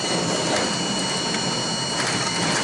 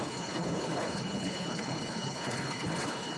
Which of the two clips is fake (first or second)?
second